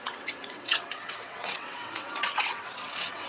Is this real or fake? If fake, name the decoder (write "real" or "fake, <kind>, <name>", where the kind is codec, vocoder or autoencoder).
fake, vocoder, WaveNeXt